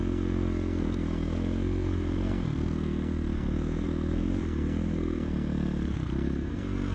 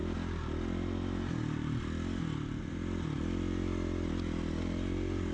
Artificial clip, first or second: first